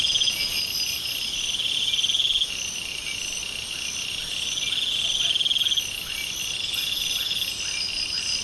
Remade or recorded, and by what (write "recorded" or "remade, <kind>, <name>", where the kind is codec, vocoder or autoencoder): recorded